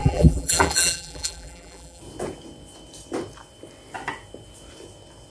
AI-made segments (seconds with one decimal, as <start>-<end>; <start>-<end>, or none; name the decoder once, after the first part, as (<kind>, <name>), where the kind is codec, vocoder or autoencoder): 0.0-2.0 (vocoder, BigVGAN v2)